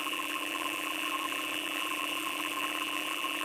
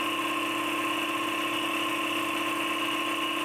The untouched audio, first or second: second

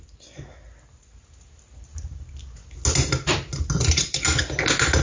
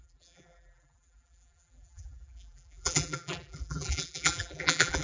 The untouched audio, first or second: first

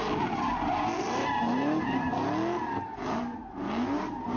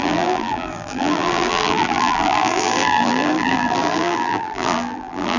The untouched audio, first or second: first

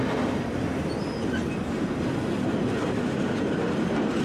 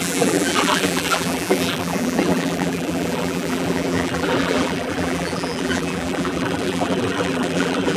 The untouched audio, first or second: first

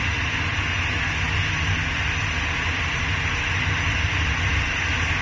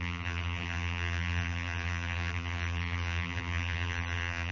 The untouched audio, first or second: first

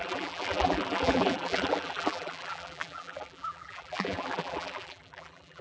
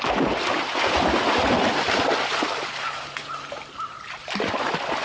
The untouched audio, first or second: second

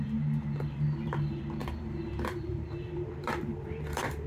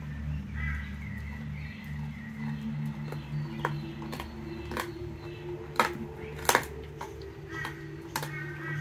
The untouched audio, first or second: second